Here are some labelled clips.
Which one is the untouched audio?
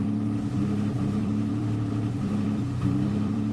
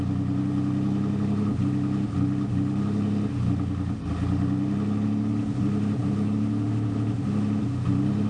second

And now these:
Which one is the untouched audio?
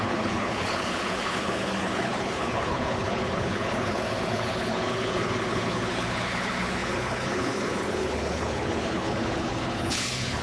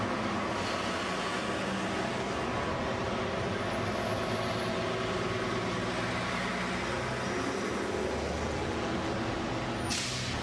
second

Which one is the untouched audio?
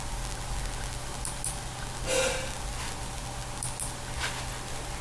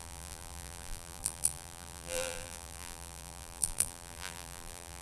first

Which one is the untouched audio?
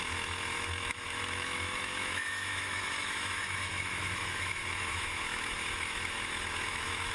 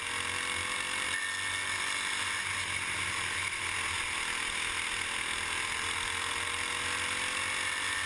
second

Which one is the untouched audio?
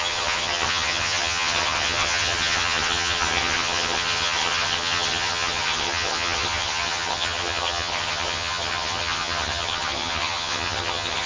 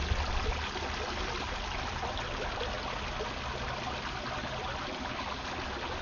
second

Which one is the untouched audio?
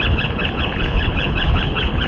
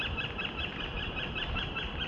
second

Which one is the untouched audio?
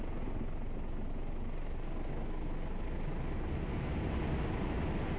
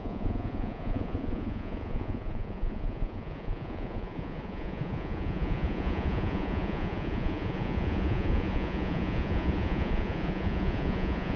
first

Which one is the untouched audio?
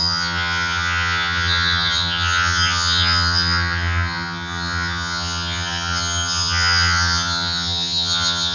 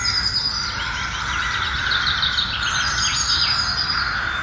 second